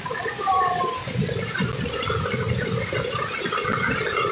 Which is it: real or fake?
real